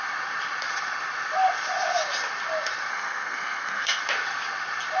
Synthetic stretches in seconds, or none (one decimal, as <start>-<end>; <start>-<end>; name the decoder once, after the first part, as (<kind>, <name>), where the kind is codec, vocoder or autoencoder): 2.9-4.0 (codec, SNAC)